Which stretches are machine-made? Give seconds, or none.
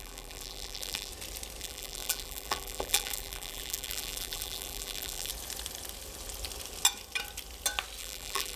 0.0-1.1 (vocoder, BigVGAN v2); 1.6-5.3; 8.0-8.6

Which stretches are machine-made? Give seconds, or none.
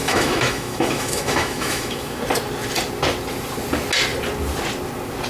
0.0-2.2 (autoencoder, DAC-VAE)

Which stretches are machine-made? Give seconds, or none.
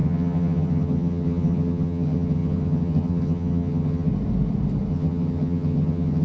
0.0-4.1 (vocoder, HiFi-GAN); 4.9-6.2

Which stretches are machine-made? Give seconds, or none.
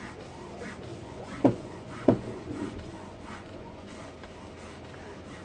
0.9-4.1 (vocoder, Vocos)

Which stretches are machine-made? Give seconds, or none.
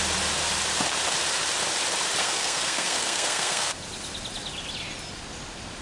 2.2-3.7 (codec, SNAC)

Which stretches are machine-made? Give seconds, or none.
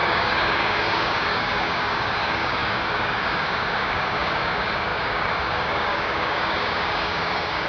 0.0-7.7 (codec, DAC)